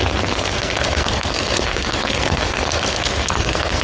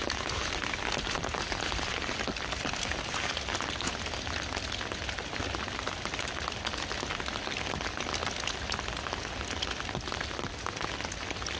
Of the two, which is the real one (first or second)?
second